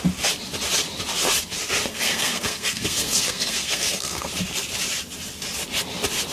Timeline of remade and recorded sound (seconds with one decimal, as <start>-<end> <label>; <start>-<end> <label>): 0.0-1.9 recorded; 1.9-4.3 remade; 4.3-6.3 recorded